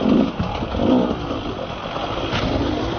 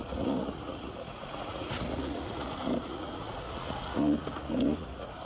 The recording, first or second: first